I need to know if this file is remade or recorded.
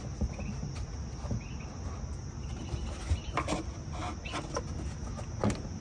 recorded